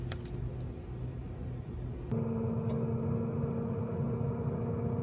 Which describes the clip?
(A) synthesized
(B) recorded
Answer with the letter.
B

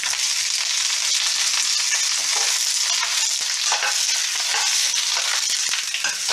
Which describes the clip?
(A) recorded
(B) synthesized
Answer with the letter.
A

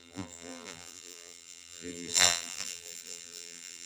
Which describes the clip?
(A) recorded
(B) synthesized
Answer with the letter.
B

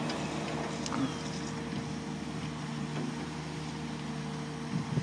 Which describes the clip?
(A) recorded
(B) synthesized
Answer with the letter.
A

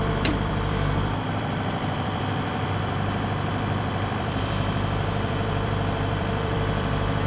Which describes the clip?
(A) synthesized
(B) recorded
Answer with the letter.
A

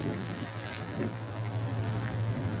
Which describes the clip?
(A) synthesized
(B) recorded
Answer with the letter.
A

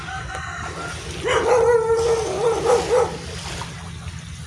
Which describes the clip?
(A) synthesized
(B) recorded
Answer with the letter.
B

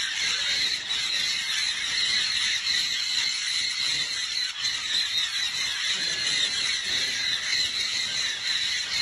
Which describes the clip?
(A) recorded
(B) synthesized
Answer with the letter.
B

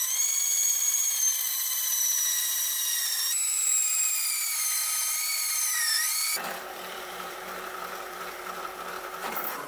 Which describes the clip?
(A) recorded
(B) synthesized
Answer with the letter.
B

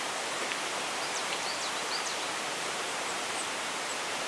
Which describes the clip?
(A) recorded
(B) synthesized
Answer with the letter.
B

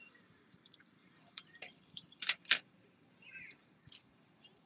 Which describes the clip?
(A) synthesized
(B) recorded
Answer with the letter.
A